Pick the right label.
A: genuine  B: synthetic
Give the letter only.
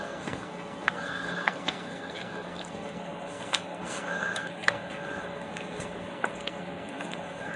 B